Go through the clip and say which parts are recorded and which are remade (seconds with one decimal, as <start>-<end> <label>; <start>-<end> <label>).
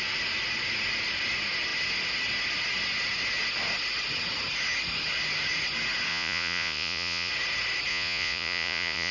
0.0-6.1 recorded; 6.1-7.3 remade; 7.3-7.9 recorded; 7.9-9.1 remade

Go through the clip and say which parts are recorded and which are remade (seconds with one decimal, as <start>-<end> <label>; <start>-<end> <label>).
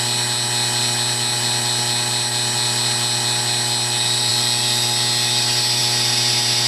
0.0-6.7 recorded